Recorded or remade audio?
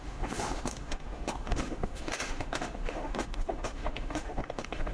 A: remade